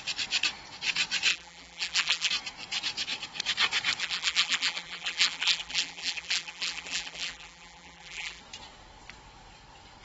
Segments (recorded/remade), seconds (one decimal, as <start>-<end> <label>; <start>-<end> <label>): 0.0-1.3 recorded; 1.3-2.3 remade; 2.3-4.0 recorded; 4.0-8.4 remade; 8.4-10.0 recorded